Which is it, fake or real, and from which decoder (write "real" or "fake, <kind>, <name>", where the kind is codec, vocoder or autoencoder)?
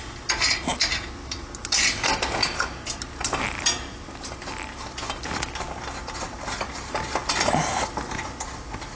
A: real